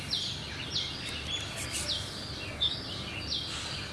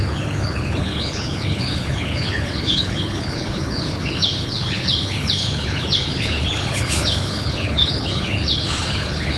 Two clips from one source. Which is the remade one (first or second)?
second